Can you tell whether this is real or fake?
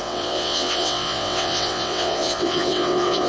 fake